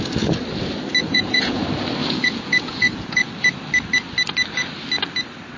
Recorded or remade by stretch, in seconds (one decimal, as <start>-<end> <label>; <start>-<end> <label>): 0.0-1.0 recorded; 1.0-1.6 remade; 1.6-2.0 recorded; 2.0-3.3 remade; 3.3-5.6 recorded